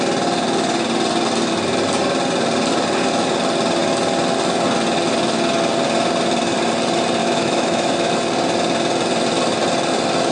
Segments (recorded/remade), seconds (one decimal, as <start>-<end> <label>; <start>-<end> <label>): 0.0-7.2 recorded; 7.2-8.1 remade; 8.1-10.3 recorded